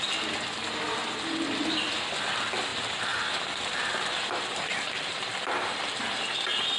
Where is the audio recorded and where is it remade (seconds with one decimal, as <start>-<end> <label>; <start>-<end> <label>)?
0.0-2.7 recorded; 2.7-5.8 remade; 5.8-6.8 recorded